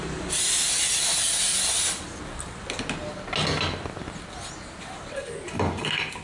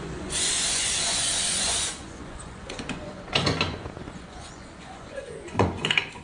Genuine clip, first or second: first